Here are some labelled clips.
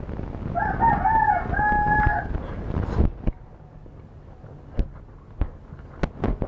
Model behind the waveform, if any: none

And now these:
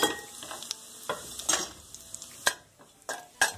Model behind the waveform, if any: none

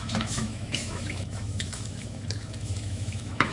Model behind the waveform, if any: autoencoder, DAC-VAE